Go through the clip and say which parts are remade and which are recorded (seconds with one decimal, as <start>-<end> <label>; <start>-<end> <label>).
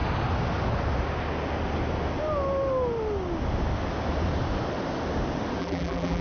0.0-5.6 recorded; 5.6-6.2 remade